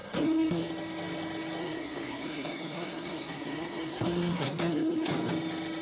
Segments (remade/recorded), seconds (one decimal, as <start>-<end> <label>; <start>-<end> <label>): 0.0-0.7 remade; 0.7-1.6 recorded; 1.6-5.1 remade; 5.1-5.8 recorded